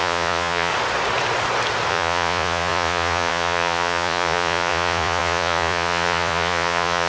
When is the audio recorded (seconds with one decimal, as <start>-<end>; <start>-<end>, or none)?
0.7-1.9